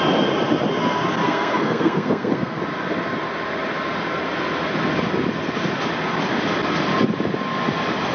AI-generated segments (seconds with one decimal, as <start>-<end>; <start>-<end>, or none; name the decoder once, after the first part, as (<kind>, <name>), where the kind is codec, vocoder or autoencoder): 1.2-2.6 (codec, SNAC)